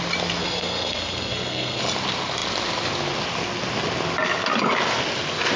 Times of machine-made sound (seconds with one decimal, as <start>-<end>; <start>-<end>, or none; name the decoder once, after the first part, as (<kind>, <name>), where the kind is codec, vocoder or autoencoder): 0.4-1.8 (codec, SNAC)